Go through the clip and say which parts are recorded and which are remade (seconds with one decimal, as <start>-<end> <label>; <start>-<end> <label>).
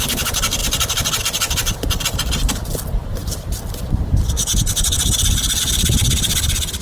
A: 0.0-0.6 remade; 0.6-1.2 recorded; 1.2-6.8 remade